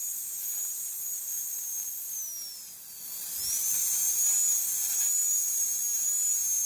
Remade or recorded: recorded